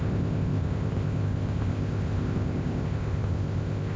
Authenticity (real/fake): fake